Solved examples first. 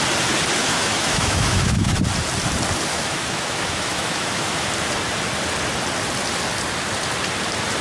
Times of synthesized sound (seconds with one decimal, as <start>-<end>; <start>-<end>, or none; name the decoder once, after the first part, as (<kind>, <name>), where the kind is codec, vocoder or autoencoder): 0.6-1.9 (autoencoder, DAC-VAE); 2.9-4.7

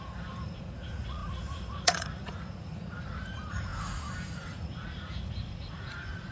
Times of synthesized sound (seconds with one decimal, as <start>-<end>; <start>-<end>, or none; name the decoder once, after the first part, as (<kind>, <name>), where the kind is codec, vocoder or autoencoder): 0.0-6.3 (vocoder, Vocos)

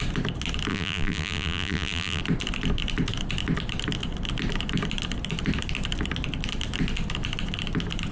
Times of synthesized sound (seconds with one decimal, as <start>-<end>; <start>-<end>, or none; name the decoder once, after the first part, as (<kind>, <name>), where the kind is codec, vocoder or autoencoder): 0.7-2.2 (vocoder, BigVGAN v2)

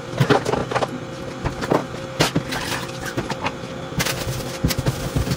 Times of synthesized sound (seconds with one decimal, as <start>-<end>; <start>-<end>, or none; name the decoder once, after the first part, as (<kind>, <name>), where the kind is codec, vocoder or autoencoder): none

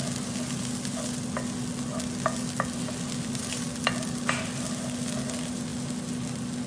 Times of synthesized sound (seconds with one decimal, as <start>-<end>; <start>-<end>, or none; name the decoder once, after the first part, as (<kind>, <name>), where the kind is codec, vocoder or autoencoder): none

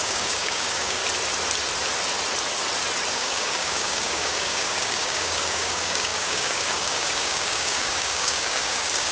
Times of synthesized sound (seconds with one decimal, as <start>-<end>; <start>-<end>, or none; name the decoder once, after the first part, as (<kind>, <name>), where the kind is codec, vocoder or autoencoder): 0.0-1.0 (codec, DAC); 3.1-9.1

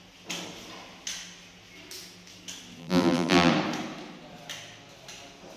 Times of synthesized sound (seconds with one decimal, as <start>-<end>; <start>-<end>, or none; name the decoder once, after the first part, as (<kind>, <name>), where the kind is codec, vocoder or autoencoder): 2.8-3.5 (vocoder, BigVGAN v2)

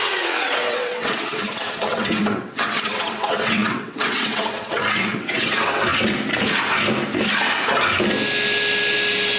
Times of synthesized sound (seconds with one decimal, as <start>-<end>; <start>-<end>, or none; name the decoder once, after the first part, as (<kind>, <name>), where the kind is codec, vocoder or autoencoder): 0.0-5.9 (vocoder, WaveNeXt)